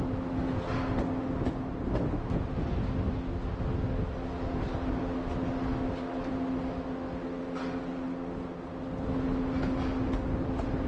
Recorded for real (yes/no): yes